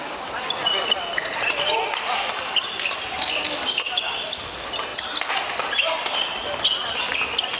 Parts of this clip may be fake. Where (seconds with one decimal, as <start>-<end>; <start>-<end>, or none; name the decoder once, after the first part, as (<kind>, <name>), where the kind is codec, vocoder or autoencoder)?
none